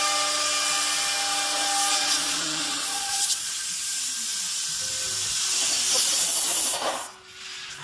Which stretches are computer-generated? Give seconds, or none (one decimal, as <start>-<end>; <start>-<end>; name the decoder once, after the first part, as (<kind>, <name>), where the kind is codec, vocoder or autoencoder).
1.9-3.5 (vocoder, Vocos)